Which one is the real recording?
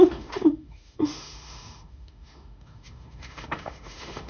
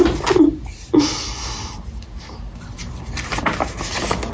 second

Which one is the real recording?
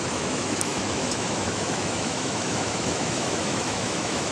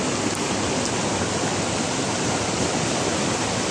second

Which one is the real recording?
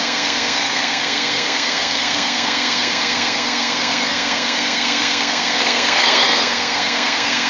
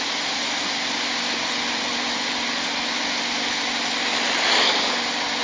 second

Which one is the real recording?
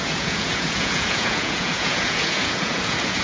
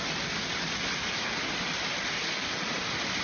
second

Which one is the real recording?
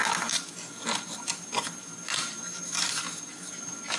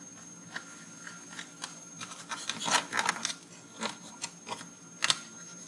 second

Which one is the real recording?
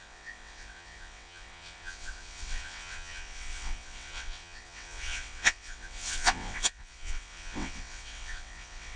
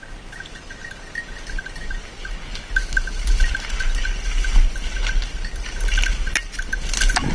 second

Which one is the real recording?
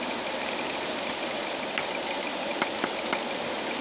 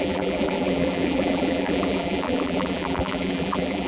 first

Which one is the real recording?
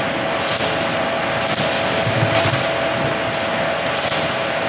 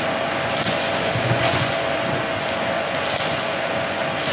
first